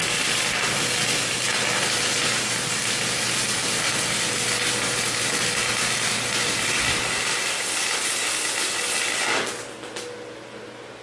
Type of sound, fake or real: real